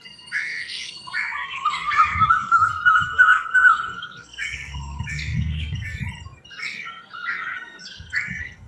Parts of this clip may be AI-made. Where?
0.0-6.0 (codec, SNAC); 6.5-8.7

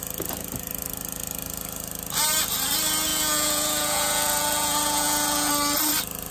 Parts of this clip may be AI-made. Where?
3.1-5.5 (vocoder, Vocos)

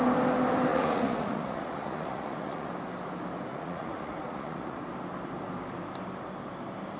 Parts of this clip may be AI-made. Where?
0.7-2.7 (vocoder, Vocos); 3.5-4.8

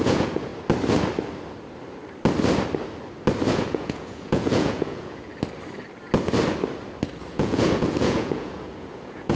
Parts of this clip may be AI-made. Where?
0.0-0.5 (vocoder, Vocos); 3.5-5.3; 7.3-9.4

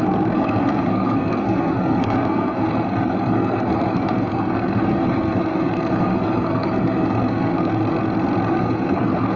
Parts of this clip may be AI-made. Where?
0.0-7.8 (codec, SNAC); 8.5-9.4

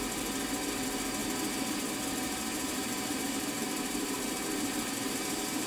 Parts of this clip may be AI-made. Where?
2.1-5.7 (vocoder, BigVGAN v2)

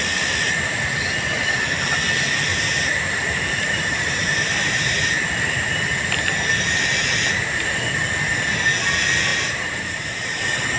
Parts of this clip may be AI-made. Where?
2.5-5.8 (vocoder, BigVGAN v2); 9.3-10.4